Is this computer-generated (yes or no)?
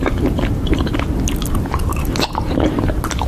no